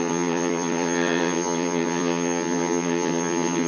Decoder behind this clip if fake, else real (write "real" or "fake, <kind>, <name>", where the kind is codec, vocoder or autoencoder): fake, vocoder, HiFi-GAN